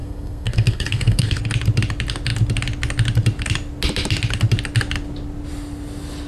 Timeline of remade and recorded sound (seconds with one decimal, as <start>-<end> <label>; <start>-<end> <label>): 0.0-1.4 remade; 1.4-6.3 recorded